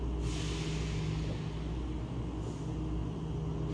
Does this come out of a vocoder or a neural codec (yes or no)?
no